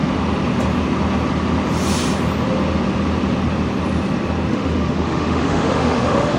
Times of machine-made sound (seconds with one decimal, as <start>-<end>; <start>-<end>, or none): 4.5-6.4